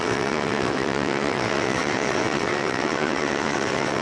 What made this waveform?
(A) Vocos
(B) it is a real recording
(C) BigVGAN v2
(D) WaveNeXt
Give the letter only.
D